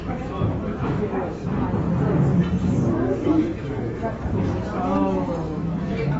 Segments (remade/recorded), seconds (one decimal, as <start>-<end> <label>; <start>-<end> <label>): 0.0-1.4 remade; 1.4-2.6 recorded; 2.6-6.2 remade